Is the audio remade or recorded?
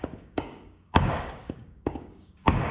remade